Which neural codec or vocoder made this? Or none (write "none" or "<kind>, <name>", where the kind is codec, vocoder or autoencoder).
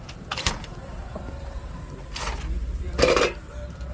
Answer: vocoder, BigVGAN v2